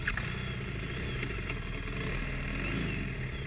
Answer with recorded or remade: recorded